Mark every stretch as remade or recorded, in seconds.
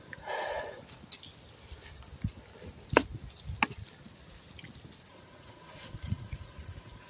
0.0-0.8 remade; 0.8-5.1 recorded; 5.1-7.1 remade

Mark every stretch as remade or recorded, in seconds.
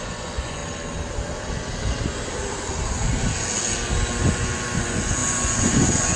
0.0-0.6 remade; 0.6-4.3 recorded; 4.3-6.2 remade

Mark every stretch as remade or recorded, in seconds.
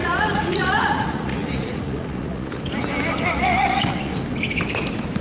0.0-2.6 remade; 2.6-3.3 recorded; 3.3-4.2 remade; 4.2-5.2 recorded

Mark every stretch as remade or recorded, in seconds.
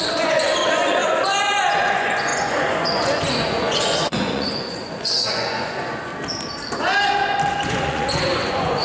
0.0-6.1 remade; 6.1-7.5 recorded; 7.5-8.8 remade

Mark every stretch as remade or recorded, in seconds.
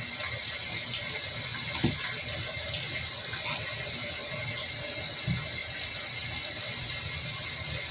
0.0-7.9 recorded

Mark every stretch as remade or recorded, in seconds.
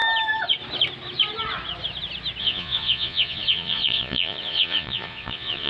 0.0-2.4 recorded; 2.4-5.7 remade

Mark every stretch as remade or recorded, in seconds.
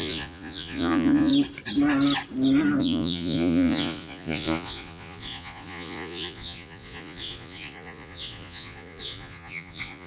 0.0-1.3 remade; 1.3-2.8 recorded; 2.8-10.1 remade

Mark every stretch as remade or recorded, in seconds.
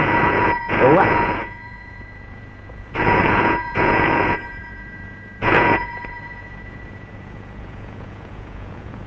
0.0-9.1 remade